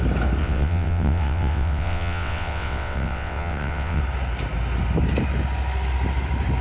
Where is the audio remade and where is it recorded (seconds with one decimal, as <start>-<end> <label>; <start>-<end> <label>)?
0.0-0.4 recorded; 0.4-4.0 remade; 4.0-6.6 recorded